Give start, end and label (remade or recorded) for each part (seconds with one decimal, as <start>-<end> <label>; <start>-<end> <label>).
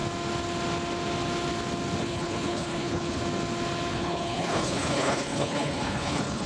0.0-2.0 recorded; 2.0-3.2 remade; 3.2-3.9 recorded; 3.9-6.5 remade